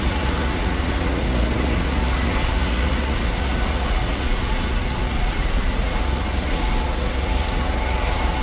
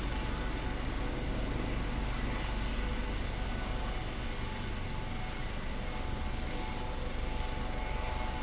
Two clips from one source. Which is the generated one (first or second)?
first